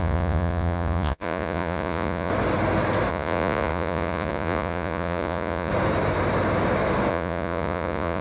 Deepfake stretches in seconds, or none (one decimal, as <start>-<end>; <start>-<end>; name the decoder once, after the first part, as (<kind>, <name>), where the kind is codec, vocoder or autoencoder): 0.0-2.3 (vocoder, Vocos); 3.1-5.7; 7.1-8.2